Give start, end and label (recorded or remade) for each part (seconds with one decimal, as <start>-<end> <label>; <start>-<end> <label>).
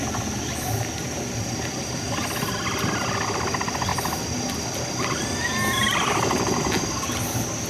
0.0-7.7 recorded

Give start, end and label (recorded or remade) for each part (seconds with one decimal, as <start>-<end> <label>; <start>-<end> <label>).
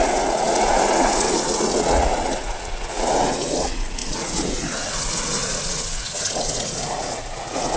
0.0-7.8 remade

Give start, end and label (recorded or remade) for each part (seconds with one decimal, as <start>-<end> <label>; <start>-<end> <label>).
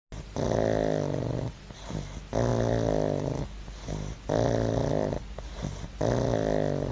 0.0-6.9 recorded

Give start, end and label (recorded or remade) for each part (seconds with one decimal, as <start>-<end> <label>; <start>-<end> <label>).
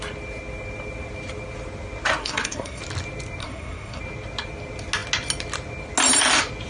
0.0-2.2 recorded; 2.2-2.8 remade; 2.8-3.4 recorded; 3.4-4.0 remade; 4.0-6.7 recorded